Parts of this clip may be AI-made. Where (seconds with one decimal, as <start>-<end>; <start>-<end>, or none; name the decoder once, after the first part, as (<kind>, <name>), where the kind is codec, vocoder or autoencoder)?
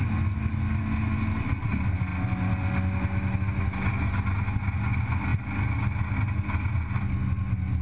none